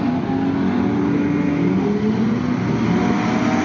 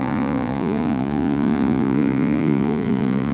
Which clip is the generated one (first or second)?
second